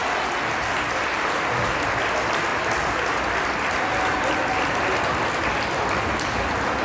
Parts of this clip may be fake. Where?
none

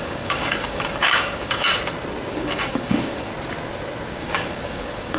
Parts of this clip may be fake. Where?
0.0-1.7 (codec, DAC); 2.3-3.3; 4.1-5.2

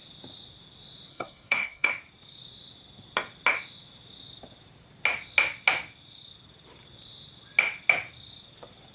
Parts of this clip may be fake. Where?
1.1-1.9 (codec, SNAC)

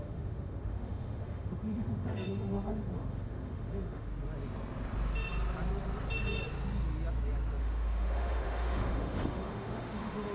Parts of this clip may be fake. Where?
0.0-4.1 (autoencoder, DAC-VAE); 7.6-10.3